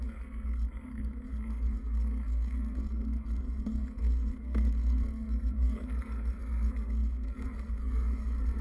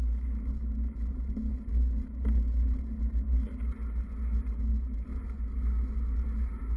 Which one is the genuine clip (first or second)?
second